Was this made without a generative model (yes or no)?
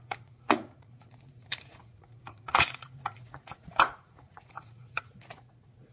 no